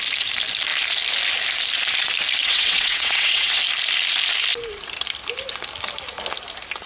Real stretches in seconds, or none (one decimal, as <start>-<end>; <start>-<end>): 0.0-2.4; 3.6-6.9